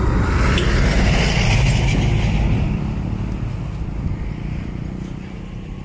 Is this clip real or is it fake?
real